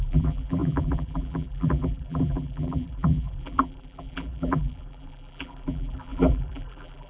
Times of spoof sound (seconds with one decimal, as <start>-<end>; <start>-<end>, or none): 0.0-7.1